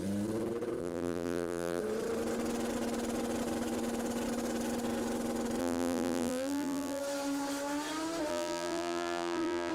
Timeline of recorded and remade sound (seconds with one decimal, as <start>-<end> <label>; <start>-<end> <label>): 0.0-0.8 recorded; 0.8-1.8 remade; 1.8-5.6 recorded; 5.6-7.0 remade; 7.0-8.3 recorded; 8.3-9.7 remade